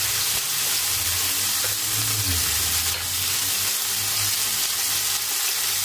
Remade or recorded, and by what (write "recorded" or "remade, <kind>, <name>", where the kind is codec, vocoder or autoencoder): recorded